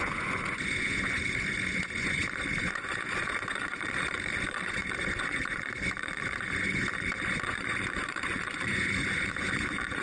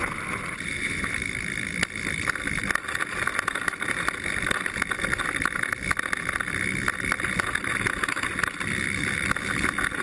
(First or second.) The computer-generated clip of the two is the first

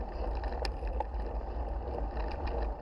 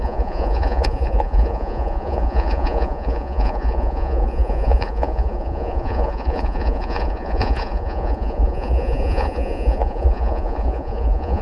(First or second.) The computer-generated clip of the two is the second